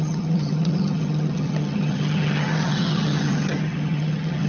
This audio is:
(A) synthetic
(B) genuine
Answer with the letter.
A